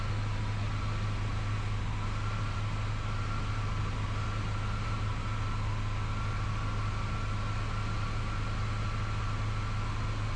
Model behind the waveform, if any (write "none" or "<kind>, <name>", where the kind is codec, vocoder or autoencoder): none